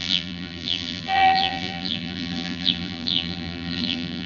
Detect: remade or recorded remade